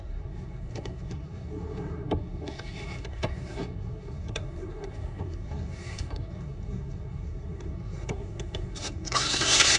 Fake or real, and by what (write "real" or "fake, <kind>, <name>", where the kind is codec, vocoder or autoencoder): fake, codec, SNAC